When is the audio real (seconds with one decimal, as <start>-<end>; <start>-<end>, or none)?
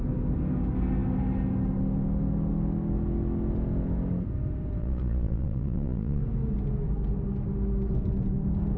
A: 0.0-4.8; 6.2-8.8